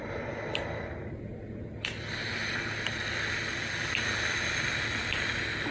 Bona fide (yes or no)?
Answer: yes